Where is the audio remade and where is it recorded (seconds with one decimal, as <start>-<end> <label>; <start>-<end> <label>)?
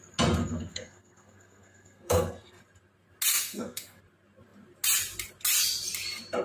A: 0.0-0.4 recorded; 0.4-2.6 remade; 2.6-3.3 recorded; 3.3-4.0 remade; 4.0-6.4 recorded